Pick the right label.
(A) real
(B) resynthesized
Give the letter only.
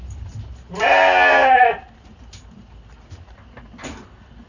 A